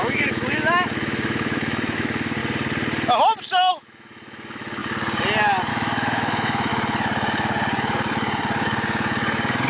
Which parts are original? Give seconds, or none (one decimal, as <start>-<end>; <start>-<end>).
2.4-3.7; 4.8-5.7; 6.7-9.7